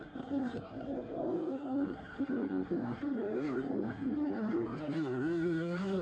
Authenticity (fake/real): fake